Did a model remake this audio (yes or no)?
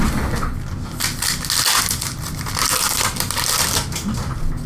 no